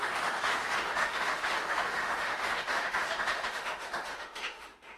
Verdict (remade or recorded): remade